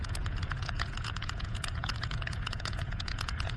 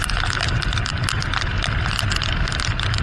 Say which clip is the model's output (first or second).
first